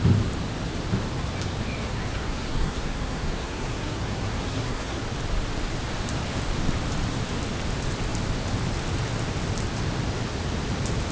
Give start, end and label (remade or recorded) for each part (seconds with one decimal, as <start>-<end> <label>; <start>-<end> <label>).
0.0-1.8 recorded; 1.8-5.0 remade; 5.0-11.1 recorded